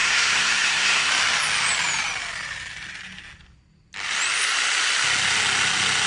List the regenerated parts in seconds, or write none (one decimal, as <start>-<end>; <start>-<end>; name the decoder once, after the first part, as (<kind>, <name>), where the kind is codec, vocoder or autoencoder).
0.0-1.1 (codec, SNAC)